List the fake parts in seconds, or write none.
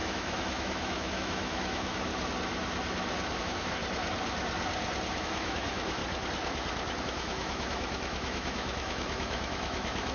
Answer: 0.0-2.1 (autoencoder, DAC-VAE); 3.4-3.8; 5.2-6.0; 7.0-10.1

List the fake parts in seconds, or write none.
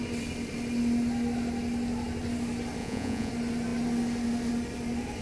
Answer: 2.8-3.3 (vocoder, Vocos)